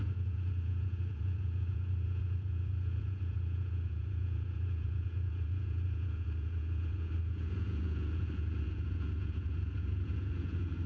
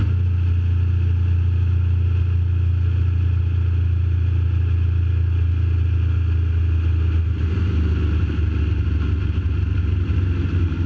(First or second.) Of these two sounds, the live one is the second